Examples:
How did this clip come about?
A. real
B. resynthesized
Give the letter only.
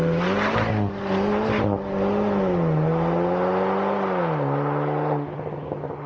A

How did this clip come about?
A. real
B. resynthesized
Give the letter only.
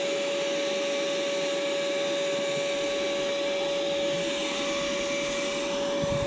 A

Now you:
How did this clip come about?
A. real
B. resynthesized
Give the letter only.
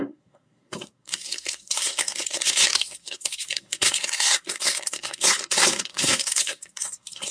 B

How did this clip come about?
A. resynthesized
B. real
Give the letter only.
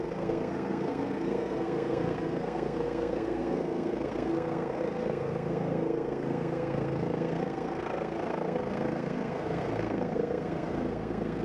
A